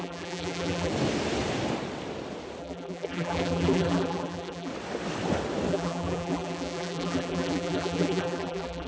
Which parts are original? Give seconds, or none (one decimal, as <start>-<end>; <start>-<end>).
0.9-2.6; 4.7-5.7